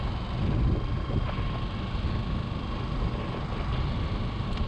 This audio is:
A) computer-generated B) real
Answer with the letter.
B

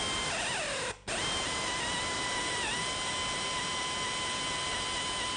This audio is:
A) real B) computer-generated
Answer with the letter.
A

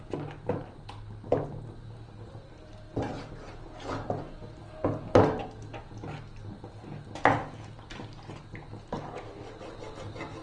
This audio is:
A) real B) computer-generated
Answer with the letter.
A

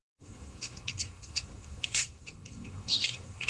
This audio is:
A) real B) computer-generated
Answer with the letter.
B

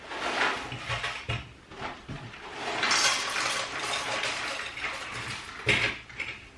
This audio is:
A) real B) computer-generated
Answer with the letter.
A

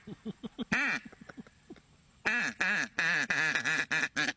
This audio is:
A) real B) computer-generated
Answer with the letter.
A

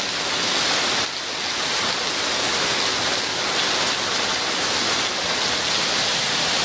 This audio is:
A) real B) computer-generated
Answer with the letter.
A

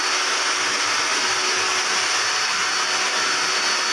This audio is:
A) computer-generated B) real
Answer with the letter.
B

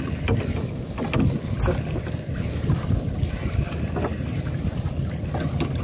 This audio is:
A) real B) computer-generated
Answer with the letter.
A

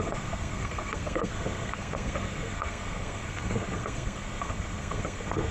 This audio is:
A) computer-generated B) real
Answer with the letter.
A